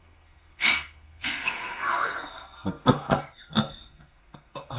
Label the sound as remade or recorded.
remade